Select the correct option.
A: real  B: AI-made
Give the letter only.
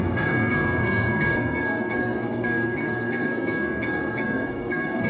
B